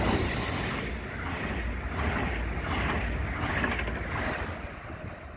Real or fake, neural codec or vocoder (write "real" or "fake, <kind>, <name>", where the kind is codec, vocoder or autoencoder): real